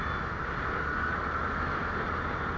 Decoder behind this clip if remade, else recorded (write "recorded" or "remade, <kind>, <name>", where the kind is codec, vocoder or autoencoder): recorded